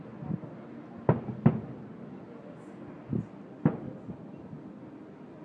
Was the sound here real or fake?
real